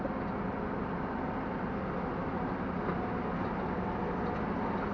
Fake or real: real